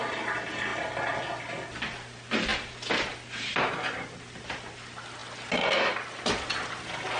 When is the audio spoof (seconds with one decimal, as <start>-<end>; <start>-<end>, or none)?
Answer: none